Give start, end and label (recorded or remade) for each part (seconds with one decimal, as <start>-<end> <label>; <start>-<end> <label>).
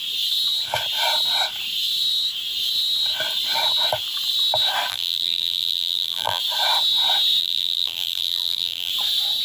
0.0-4.9 recorded; 4.9-6.4 remade; 6.4-7.4 recorded; 7.4-8.9 remade; 8.9-9.4 recorded